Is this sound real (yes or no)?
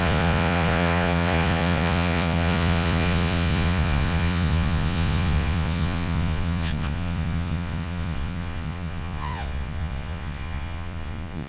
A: no